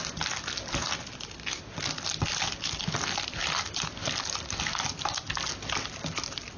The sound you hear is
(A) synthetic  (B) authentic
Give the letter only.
B